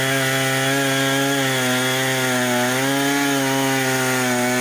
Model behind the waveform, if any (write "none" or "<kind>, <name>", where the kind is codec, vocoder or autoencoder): none